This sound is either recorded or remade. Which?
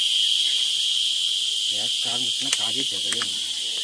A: recorded